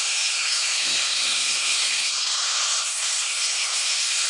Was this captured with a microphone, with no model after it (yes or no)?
no